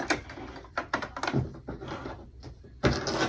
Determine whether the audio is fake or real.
real